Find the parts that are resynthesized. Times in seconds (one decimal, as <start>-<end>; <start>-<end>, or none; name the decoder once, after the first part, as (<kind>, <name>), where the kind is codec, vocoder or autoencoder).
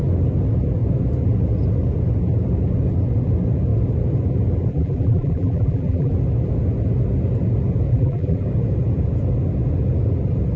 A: 4.7-6.1 (vocoder, BigVGAN v2); 7.9-8.5